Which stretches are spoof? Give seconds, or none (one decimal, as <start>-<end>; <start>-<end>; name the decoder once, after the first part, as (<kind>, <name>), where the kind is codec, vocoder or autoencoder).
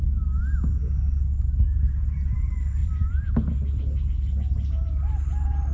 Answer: 2.8-3.3 (vocoder, BigVGAN v2)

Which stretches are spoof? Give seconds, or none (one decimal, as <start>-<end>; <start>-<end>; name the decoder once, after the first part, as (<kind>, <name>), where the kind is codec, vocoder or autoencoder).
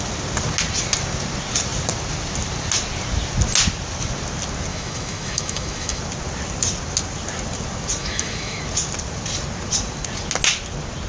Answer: 4.7-6.0 (autoencoder, DAC-VAE); 8.0-8.6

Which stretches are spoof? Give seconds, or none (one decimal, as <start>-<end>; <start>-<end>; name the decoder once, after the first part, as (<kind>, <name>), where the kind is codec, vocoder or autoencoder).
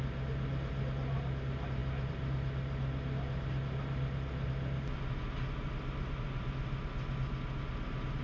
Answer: none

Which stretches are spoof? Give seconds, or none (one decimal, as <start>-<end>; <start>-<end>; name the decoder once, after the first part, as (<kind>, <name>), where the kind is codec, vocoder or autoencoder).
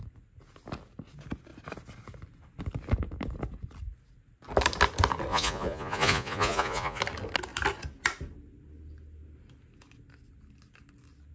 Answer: 5.3-7.0 (vocoder, Vocos)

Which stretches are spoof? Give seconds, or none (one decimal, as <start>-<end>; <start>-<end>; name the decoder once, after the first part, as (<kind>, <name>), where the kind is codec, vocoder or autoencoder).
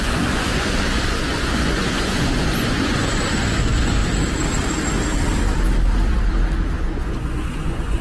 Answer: 0.0-4.0 (vocoder, Vocos); 6.8-8.0